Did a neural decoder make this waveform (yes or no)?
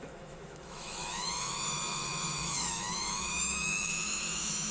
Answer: yes